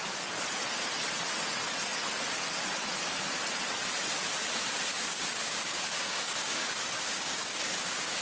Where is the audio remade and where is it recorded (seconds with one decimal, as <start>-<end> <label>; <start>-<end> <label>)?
0.0-4.9 recorded; 4.9-8.2 remade